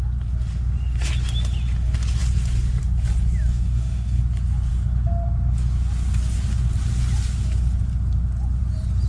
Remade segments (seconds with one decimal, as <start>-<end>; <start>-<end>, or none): 3.5-4.2